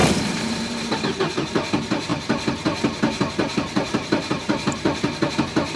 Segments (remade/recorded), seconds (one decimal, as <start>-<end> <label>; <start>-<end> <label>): 0.0-0.9 remade; 0.9-2.1 recorded; 2.1-5.3 remade; 5.3-5.8 recorded